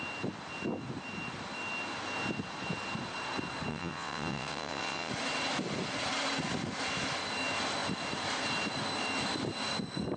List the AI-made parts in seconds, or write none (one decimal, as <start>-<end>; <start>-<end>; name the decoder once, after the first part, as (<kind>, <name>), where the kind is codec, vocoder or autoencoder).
3.7-5.1 (vocoder, WaveNeXt)

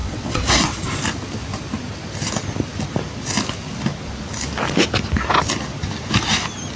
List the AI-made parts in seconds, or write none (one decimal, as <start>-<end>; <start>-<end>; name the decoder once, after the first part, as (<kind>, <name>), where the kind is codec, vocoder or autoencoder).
0.0-0.8 (vocoder, WaveNeXt)

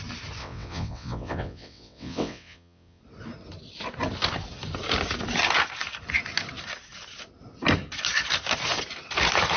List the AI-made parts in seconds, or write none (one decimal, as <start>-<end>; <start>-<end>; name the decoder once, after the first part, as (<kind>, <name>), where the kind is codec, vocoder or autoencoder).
0.4-3.0 (vocoder, WaveNeXt)

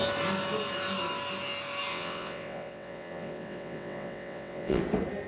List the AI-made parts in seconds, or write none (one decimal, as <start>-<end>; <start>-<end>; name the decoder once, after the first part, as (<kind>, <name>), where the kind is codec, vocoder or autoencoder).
1.9-4.8 (vocoder, WaveNeXt)

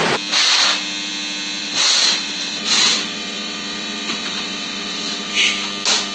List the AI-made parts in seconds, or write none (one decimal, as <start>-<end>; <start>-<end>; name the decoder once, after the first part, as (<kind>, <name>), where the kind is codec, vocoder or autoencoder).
1.6-5.3 (vocoder, WaveNeXt)

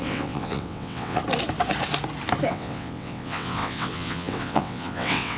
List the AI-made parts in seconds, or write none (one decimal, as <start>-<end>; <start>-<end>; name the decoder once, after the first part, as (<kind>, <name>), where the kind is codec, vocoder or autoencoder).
0.0-1.2 (vocoder, WaveNeXt); 2.5-5.4